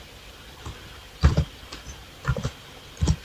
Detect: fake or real real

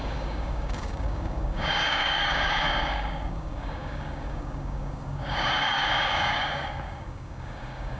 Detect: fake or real fake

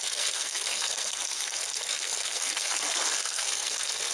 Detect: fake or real fake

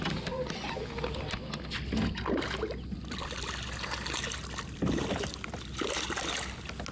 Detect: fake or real real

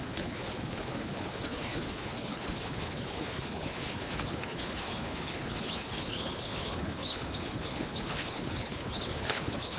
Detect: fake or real fake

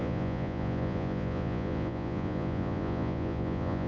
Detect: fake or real fake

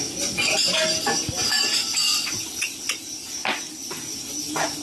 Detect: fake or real real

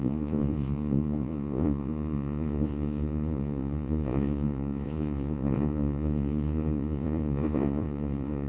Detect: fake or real fake